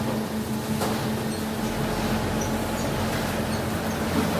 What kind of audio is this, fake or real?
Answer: real